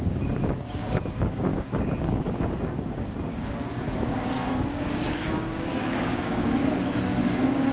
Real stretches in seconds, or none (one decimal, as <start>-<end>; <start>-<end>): none